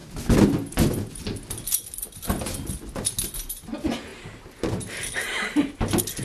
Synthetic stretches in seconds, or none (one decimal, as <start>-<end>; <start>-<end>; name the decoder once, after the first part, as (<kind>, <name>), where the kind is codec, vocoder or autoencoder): none